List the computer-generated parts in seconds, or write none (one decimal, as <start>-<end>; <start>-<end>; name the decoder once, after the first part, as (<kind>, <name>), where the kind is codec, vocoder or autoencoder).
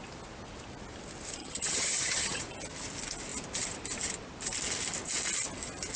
1.4-2.4 (vocoder, HiFi-GAN)